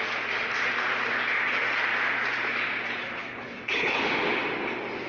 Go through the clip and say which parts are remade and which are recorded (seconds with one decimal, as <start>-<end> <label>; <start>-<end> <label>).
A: 0.0-3.0 recorded; 3.0-4.0 remade; 4.0-5.1 recorded